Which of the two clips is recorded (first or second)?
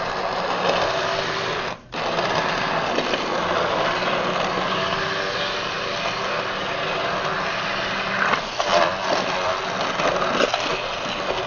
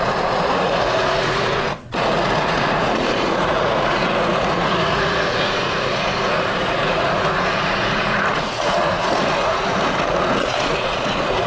first